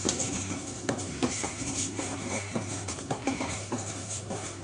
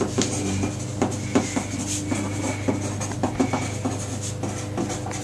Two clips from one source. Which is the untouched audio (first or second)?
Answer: second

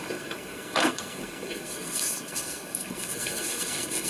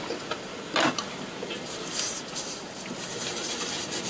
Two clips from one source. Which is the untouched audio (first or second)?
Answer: second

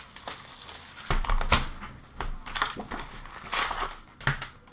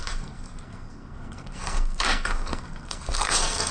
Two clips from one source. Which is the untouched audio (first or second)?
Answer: first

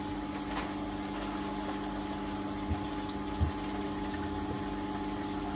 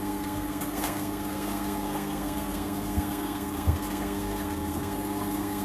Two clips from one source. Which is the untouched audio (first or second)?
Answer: first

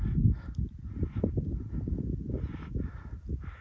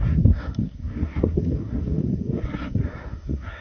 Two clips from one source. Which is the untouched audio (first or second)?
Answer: first